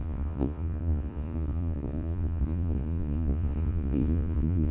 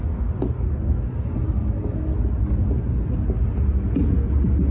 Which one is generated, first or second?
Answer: first